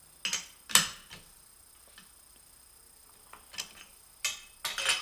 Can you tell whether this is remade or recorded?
recorded